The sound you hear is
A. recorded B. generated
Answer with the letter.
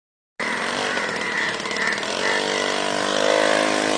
A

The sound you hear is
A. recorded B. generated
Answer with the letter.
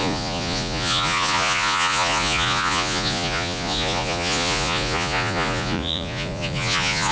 B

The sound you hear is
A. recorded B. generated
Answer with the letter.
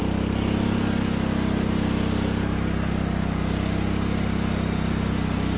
A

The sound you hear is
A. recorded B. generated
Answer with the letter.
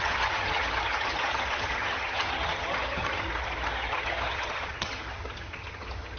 B